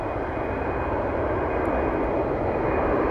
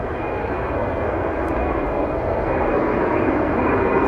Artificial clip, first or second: second